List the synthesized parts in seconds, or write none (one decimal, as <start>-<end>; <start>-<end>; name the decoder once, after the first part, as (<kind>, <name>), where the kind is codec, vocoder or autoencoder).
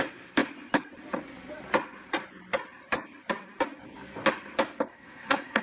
4.9-5.6 (codec, SNAC)